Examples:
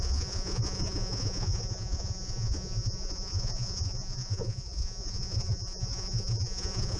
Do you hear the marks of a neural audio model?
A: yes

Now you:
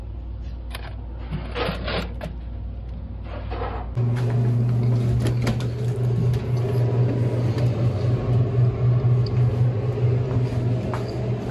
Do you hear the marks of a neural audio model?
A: no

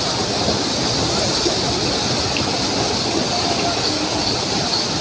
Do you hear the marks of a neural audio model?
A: no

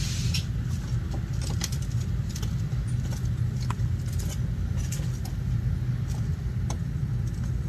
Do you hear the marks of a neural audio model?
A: no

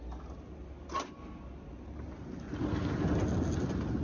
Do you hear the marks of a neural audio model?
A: no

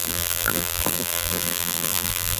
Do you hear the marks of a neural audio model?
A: yes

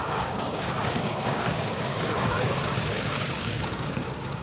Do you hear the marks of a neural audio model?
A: yes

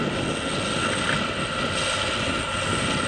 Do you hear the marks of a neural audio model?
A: no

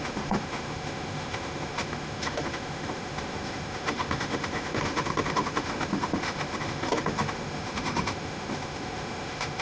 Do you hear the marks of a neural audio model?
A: yes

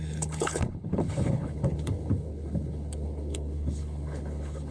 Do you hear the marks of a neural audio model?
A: yes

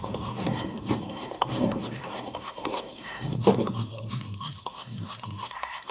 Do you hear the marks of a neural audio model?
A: yes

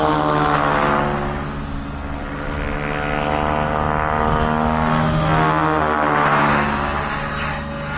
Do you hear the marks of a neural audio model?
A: no